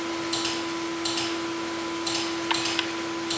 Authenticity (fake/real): real